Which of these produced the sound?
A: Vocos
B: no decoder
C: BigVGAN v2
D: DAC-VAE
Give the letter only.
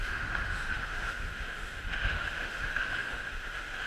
D